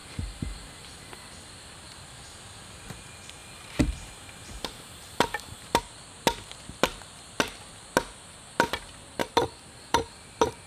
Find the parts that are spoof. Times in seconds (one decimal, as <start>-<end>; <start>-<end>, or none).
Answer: 3.4-5.8; 6.9-7.4; 9.2-10.7